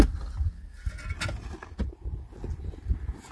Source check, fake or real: real